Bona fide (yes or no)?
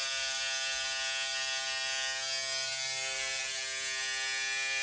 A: yes